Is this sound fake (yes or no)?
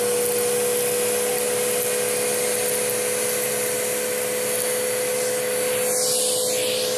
no